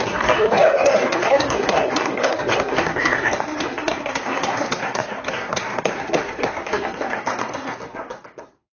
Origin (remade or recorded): remade